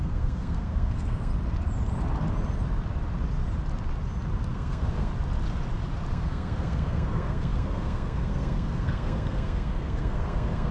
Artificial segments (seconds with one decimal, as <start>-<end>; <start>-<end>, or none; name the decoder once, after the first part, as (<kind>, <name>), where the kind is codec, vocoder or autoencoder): 0.0-1.3 (codec, SNAC); 4.5-5.1; 6.1-10.7